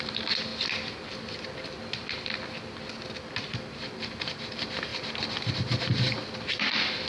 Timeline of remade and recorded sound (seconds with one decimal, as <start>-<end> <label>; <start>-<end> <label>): 0.0-0.5 remade; 0.5-3.5 recorded; 3.5-4.9 remade; 4.9-5.5 recorded; 5.5-7.1 remade